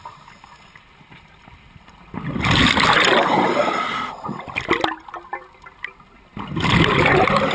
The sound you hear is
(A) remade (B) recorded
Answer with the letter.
B